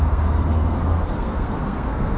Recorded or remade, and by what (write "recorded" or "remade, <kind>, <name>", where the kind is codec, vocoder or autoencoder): remade, codec, SNAC